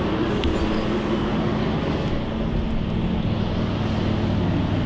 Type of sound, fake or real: real